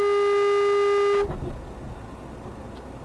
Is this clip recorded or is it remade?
recorded